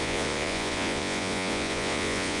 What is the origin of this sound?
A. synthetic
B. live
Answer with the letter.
A